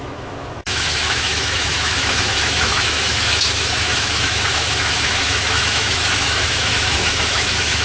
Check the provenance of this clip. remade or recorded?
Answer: remade